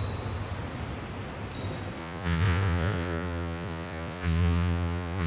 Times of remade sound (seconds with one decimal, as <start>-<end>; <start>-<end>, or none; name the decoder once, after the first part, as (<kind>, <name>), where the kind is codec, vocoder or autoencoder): 2.0-5.3 (vocoder, Vocos)